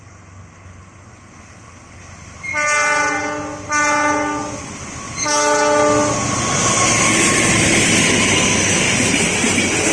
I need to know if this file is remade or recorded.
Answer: recorded